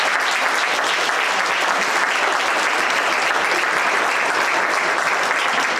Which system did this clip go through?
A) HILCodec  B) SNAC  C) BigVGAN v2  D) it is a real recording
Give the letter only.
D